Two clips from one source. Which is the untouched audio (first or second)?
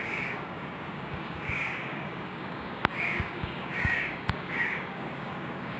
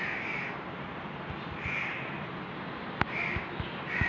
second